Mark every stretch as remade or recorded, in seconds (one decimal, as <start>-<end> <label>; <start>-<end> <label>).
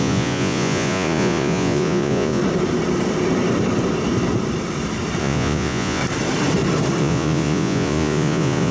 0.0-2.4 remade; 2.4-5.2 recorded; 5.2-6.0 remade; 6.0-7.0 recorded; 7.0-8.7 remade